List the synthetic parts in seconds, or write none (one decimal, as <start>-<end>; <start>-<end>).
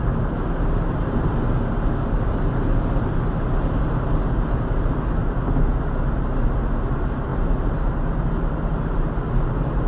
none